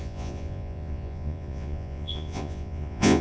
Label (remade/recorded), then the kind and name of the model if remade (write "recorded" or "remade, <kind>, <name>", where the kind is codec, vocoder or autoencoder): remade, vocoder, Vocos